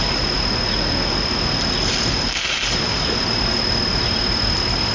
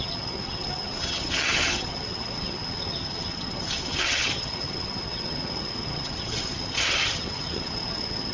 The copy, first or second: second